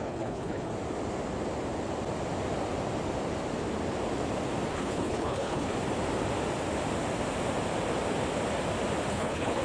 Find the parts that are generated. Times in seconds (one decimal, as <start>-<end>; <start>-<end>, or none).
0.0-0.7; 4.7-5.7; 9.1-9.6